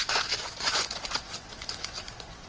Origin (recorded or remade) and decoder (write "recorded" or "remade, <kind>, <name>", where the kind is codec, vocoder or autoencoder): remade, vocoder, Vocos